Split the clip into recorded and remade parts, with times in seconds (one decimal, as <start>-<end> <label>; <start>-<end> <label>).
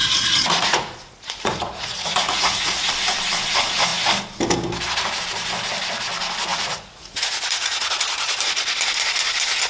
0.0-2.9 remade; 2.9-6.5 recorded; 6.5-8.4 remade; 8.4-9.7 recorded